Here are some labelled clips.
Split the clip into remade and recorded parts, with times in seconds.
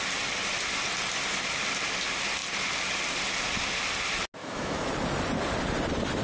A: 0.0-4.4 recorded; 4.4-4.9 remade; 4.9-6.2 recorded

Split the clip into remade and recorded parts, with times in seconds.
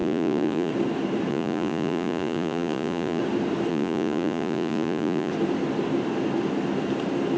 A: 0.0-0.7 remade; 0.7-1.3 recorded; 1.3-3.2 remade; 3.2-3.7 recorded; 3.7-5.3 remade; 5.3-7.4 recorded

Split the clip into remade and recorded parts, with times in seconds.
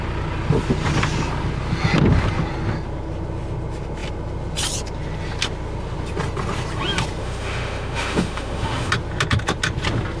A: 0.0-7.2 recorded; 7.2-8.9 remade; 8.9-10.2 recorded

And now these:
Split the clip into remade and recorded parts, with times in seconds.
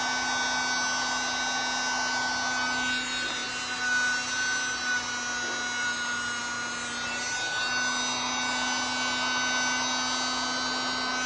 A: 0.0-11.3 recorded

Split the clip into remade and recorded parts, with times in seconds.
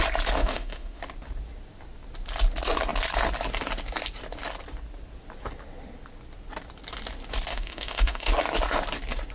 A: 0.0-0.4 recorded; 0.4-1.0 remade; 1.0-7.5 recorded; 7.5-8.3 remade; 8.3-9.3 recorded